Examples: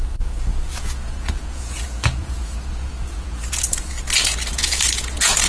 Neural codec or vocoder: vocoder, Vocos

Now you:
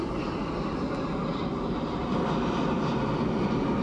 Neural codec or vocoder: none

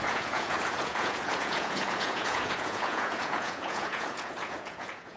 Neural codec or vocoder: vocoder, Vocos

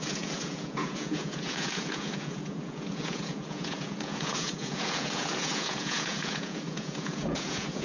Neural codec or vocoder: vocoder, Vocos